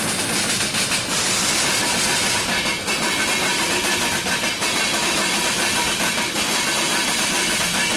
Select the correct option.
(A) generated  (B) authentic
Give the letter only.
B